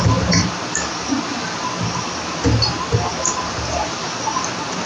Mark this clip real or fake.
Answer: real